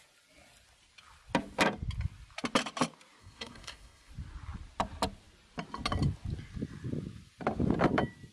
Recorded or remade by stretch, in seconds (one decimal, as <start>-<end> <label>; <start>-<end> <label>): 0.0-3.2 recorded; 3.2-4.1 remade; 4.1-8.3 recorded